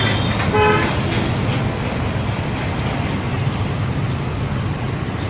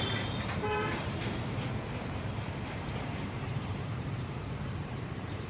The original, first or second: first